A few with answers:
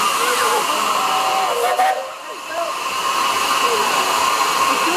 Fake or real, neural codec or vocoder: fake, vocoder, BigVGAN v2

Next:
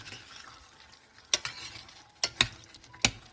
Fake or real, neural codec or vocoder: real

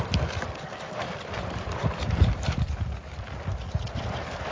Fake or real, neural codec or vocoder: fake, vocoder, BigVGAN v2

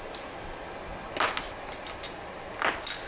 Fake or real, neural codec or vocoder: real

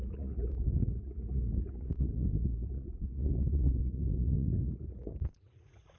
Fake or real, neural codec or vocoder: fake, vocoder, Vocos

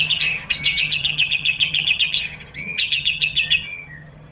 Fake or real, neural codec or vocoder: fake, vocoder, HiFi-GAN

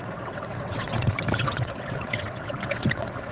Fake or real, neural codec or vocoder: fake, vocoder, WaveNeXt